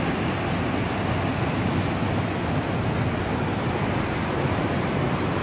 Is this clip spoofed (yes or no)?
no